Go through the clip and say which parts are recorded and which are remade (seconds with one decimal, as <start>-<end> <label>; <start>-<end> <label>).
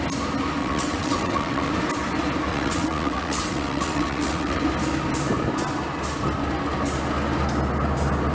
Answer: 0.0-0.6 recorded; 0.6-1.7 remade; 1.7-2.5 recorded; 2.5-4.6 remade; 4.6-8.3 recorded